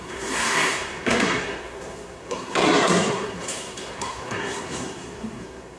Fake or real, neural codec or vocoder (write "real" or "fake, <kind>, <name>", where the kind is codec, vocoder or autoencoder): fake, codec, SNAC